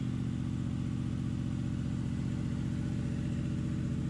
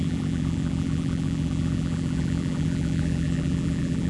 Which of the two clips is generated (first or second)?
second